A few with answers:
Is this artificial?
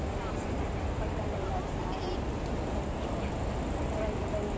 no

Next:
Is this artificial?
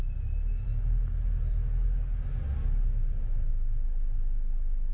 no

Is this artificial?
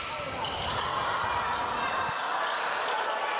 no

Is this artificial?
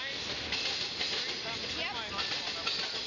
no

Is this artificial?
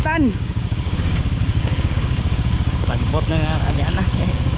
yes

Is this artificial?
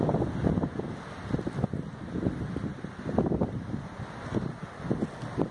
no